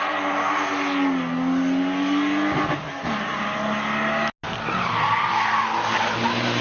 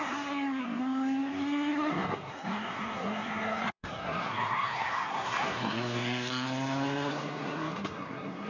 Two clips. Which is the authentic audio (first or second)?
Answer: first